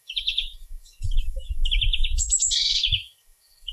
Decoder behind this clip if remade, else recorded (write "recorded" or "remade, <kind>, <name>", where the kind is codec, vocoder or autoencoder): remade, autoencoder, DAC-VAE